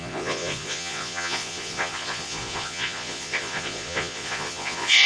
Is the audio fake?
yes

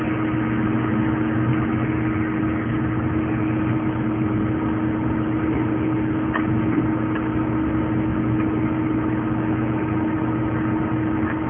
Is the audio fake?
no